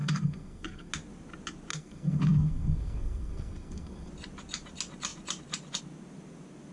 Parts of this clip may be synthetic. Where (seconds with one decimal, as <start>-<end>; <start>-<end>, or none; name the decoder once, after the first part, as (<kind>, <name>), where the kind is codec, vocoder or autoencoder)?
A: 0.0-0.9 (codec, SNAC); 1.7-4.1